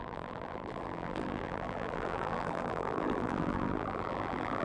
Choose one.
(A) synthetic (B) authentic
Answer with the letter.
A